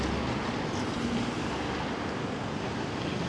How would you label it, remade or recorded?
recorded